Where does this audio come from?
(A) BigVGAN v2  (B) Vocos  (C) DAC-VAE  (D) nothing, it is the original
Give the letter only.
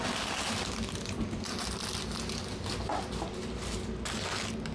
D